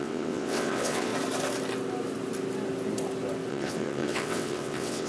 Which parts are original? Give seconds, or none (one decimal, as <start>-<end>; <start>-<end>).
1.1-3.5